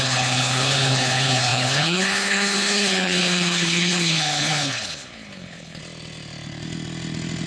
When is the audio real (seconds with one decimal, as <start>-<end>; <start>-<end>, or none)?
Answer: 5.8-7.5